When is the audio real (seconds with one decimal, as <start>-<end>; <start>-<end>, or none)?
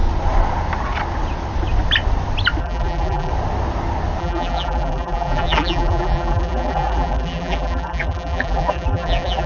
0.0-2.6; 3.3-4.2